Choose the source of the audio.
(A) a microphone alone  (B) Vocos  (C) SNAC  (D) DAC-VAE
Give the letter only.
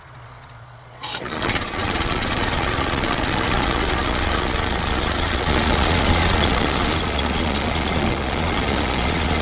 B